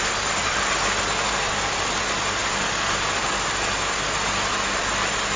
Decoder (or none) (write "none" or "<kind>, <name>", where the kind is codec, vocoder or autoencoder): none